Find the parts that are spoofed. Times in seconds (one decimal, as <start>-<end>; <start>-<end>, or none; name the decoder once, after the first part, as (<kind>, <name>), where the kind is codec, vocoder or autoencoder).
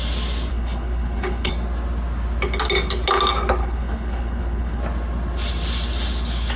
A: 0.5-1.5 (codec, HILCodec); 3.6-4.8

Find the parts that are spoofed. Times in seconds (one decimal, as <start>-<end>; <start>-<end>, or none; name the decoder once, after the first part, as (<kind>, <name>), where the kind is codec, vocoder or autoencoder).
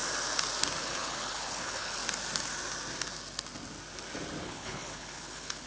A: 0.8-2.0 (codec, HILCodec); 4.4-5.7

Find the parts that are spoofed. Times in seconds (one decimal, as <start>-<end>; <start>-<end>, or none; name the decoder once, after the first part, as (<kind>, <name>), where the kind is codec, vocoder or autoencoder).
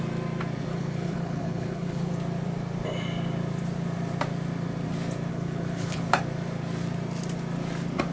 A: 0.7-2.1 (codec, HILCodec); 5.3-6.0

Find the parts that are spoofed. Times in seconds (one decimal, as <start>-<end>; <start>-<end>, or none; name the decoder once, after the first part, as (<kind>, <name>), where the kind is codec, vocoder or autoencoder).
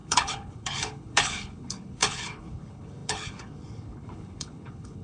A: 0.0-5.0 (codec, HILCodec)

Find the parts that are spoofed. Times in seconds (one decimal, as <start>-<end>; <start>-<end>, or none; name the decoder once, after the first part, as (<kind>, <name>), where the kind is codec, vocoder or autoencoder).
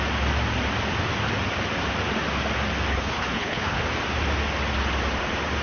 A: 2.9-3.8 (codec, HILCodec)